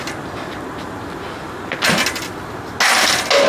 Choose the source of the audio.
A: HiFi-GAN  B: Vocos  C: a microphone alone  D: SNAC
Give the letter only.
C